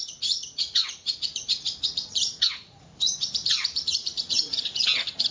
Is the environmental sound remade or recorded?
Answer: remade